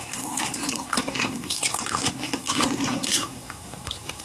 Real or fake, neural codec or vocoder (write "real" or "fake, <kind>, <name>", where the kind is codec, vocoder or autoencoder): fake, codec, SNAC